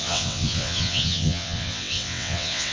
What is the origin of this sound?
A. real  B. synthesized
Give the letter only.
B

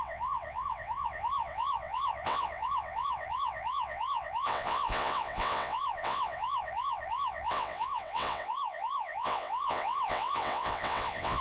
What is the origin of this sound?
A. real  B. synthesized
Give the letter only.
B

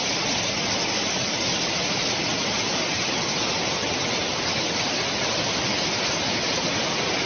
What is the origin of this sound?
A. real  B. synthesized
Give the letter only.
A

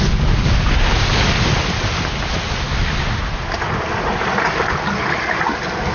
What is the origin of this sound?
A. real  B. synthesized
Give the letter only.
A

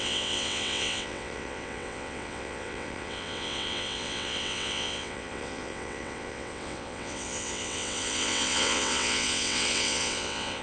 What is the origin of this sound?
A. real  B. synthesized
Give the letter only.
B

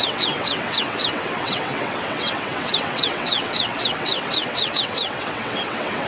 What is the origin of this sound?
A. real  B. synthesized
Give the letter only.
B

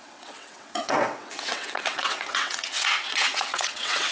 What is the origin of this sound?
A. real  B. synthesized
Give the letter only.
B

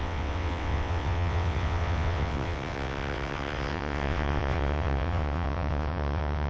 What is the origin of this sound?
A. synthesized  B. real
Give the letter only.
A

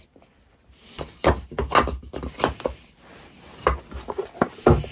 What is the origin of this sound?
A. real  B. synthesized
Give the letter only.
A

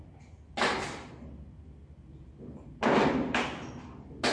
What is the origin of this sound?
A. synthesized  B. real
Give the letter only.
B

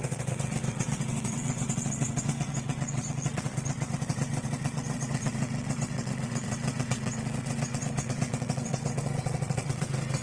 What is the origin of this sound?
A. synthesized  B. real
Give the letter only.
A